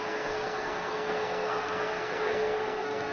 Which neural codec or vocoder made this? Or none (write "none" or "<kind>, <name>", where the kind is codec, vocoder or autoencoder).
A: codec, SNAC